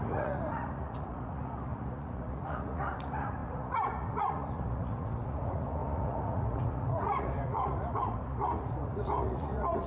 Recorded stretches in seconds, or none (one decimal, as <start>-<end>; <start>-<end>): none